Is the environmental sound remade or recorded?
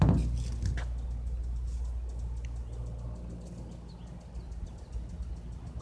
recorded